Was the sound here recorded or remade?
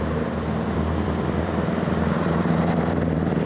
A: remade